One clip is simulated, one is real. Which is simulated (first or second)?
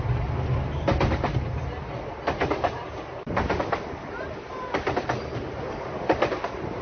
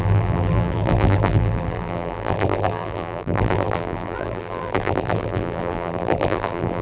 second